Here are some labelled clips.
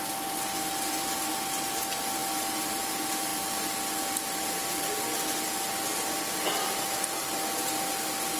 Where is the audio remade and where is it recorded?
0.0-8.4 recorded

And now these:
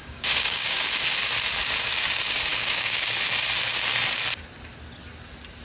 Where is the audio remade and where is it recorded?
0.0-0.9 remade; 0.9-2.5 recorded; 2.5-3.1 remade; 3.1-5.6 recorded

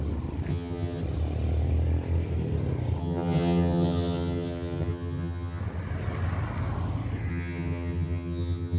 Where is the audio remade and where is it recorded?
0.0-0.5 recorded; 0.5-1.0 remade; 1.0-3.0 recorded; 3.0-5.6 remade; 5.6-7.3 recorded; 7.3-8.8 remade

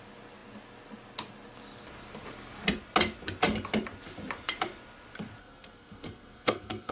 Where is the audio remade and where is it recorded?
0.0-5.4 recorded; 5.4-6.9 remade

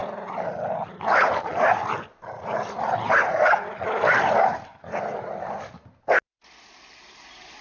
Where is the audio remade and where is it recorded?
0.0-7.6 recorded